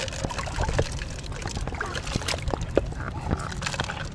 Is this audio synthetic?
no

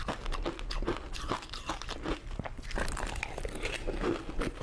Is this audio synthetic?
no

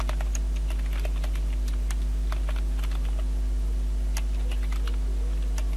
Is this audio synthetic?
no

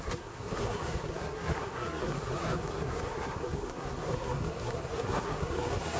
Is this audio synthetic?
yes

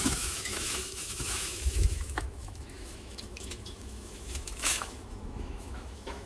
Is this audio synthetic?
yes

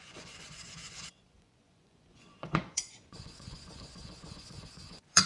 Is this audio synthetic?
yes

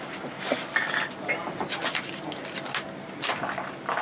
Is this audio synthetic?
no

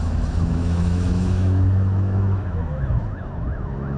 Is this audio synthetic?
yes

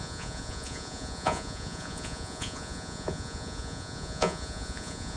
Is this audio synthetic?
yes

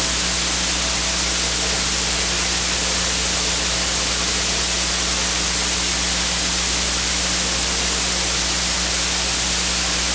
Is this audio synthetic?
no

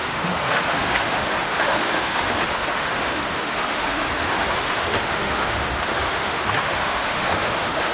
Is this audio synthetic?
yes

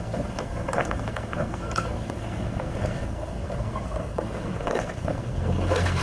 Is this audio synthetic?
yes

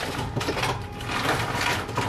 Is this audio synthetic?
no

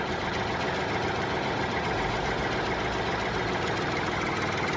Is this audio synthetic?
no